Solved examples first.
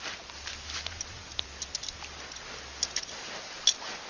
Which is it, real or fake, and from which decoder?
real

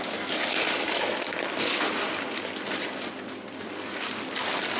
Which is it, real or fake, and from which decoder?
real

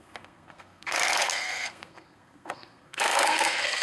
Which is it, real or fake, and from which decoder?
fake, codec, SNAC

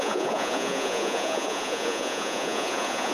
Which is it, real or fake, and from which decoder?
fake, vocoder, Vocos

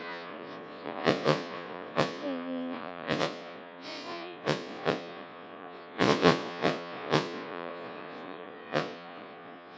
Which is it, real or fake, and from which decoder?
fake, vocoder, Vocos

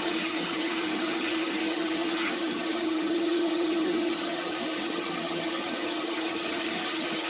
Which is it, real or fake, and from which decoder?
fake, vocoder, HiFi-GAN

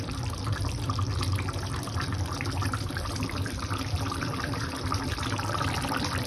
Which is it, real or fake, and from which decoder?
fake, vocoder, BigVGAN v2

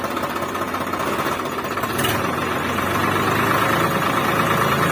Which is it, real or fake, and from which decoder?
real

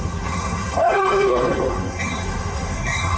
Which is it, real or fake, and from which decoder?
fake, codec, SNAC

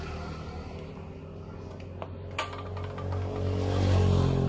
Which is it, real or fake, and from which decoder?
real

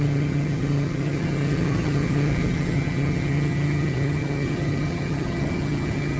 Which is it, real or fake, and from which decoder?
fake, vocoder, HiFi-GAN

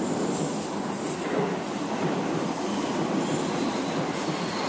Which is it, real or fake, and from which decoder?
real